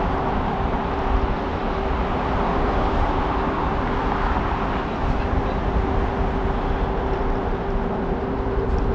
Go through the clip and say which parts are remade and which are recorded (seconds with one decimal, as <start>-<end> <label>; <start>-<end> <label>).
0.0-8.9 recorded